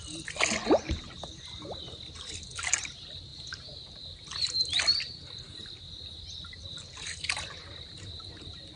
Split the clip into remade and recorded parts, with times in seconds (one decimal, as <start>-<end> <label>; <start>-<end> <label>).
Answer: 0.0-8.8 recorded